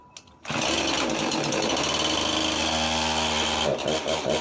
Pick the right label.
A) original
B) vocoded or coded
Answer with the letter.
A